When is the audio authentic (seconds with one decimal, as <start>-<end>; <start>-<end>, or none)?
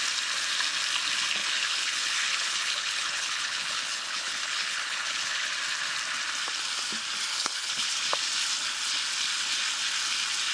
0.0-1.4; 5.5-7.3; 7.9-10.5